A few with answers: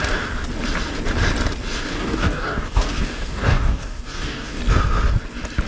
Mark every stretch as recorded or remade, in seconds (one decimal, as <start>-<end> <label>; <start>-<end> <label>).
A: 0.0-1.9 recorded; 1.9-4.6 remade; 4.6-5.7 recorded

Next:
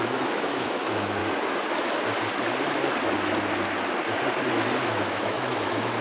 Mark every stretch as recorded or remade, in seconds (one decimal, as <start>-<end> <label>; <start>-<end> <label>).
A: 0.0-1.2 remade; 1.2-4.8 recorded; 4.8-6.0 remade

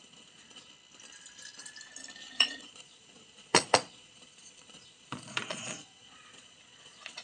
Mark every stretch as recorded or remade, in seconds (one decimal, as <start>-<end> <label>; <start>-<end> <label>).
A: 0.0-0.7 remade; 0.7-2.3 recorded; 2.3-7.2 remade